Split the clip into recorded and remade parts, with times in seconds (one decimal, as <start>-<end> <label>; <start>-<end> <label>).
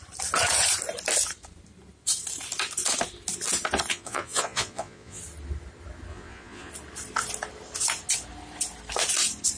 0.0-3.9 recorded; 3.9-5.2 remade; 5.2-6.1 recorded; 6.1-6.7 remade; 6.7-9.6 recorded